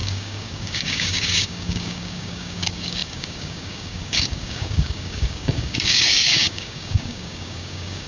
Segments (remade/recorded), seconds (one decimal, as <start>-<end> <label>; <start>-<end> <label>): 0.0-8.1 remade